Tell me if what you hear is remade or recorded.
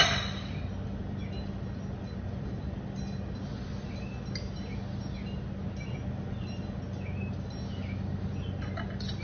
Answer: recorded